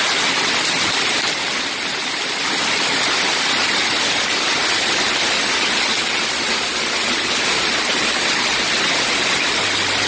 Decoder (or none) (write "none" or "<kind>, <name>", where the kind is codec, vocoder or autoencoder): none